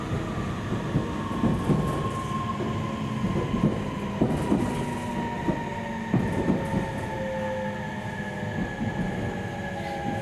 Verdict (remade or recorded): recorded